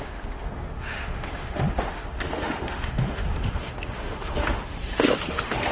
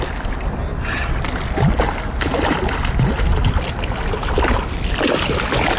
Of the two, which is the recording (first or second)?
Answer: second